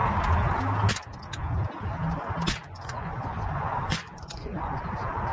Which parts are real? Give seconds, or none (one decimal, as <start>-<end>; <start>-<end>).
0.0-2.6; 4.8-5.3